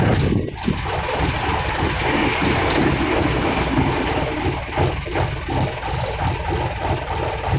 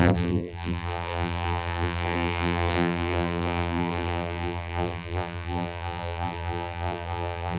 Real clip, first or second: first